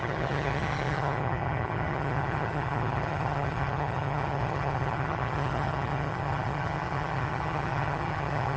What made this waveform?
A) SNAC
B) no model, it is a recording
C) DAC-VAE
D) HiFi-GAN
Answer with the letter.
D